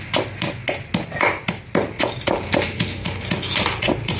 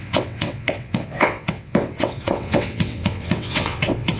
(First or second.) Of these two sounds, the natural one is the first